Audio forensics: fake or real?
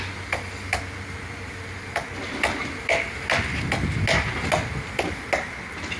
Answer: real